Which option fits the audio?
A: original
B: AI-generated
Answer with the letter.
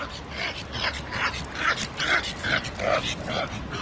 A